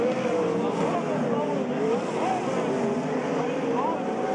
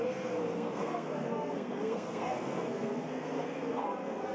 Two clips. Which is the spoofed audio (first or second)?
second